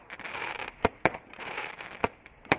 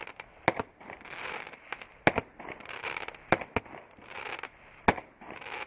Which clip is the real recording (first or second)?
second